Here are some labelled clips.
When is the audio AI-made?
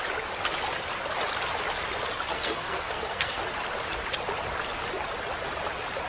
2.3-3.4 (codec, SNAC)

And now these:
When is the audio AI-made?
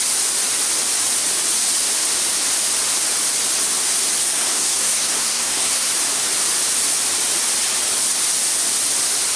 4.2-5.9 (codec, SNAC)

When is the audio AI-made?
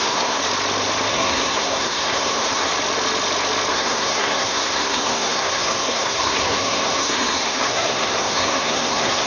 0.0-0.4 (codec, SNAC); 1.1-2.7; 3.7-9.3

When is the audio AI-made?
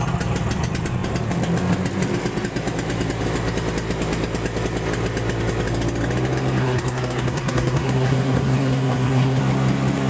6.6-9.4 (codec, SNAC)